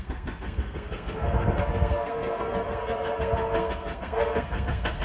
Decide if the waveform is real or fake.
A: fake